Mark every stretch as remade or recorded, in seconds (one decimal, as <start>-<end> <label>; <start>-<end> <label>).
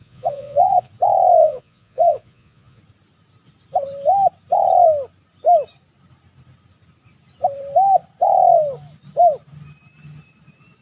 0.0-0.9 remade; 0.9-1.4 recorded; 1.4-2.8 remade; 2.8-10.8 recorded